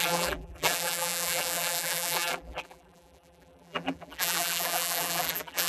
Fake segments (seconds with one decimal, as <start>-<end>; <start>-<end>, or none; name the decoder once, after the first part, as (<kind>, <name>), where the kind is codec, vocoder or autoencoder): 0.0-5.7 (vocoder, BigVGAN v2)